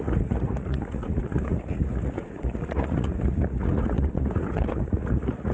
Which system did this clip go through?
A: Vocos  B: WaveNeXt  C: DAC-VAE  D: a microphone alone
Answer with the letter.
A